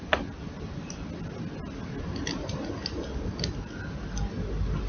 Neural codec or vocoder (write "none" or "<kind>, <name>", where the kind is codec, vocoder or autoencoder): none